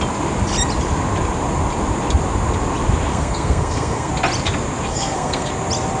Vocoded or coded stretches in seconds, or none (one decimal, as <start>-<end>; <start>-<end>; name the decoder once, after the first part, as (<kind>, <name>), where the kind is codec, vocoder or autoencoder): 3.1-4.1 (codec, SNAC); 4.9-5.5